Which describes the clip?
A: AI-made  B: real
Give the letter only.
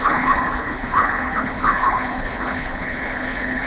A